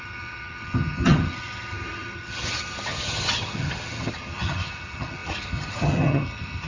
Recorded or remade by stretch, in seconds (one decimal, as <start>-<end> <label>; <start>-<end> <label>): 0.0-6.7 remade